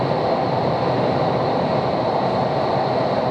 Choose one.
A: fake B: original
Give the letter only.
A